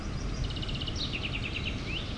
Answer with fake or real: real